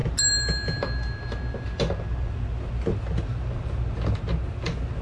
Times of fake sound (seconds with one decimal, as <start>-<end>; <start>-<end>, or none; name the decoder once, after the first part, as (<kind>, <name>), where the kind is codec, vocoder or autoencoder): none